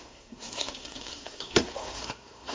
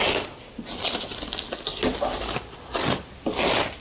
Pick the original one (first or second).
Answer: second